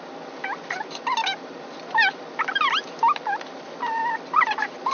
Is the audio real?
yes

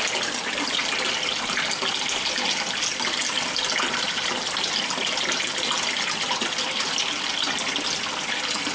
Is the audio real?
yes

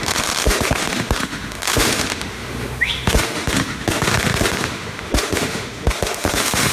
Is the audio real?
no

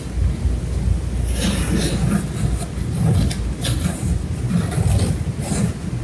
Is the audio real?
yes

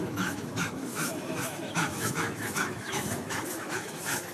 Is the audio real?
no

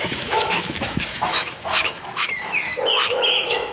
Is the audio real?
no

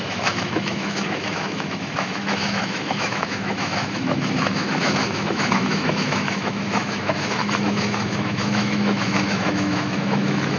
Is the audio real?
no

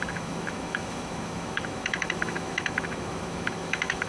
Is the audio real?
no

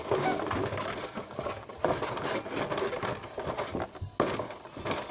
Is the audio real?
yes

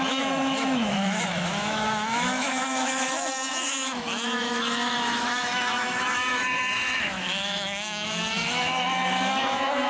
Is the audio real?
no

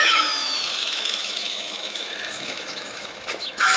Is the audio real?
no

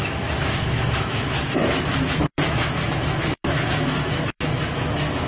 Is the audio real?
no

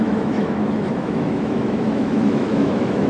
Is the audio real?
no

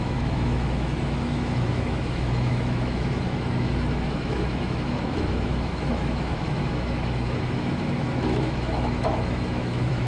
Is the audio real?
no